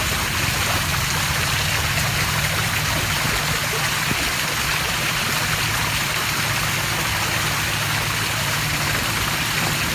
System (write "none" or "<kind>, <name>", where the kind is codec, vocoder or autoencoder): none